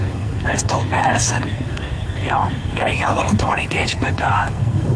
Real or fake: fake